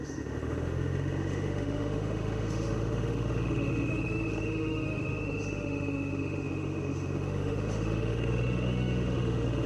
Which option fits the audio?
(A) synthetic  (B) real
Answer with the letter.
A